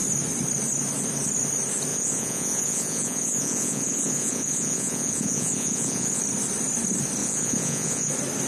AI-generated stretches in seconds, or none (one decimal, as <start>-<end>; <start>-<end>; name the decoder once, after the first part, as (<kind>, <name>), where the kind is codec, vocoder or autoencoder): 1.9-6.2 (vocoder, Vocos); 7.2-8.1